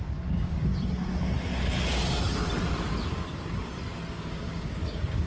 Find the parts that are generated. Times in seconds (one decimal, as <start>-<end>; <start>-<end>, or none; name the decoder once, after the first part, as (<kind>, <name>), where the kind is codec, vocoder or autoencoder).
0.0-0.7 (codec, DAC); 1.6-2.0; 4.1-5.3